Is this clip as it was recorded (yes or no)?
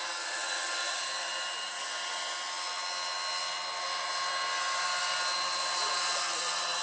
yes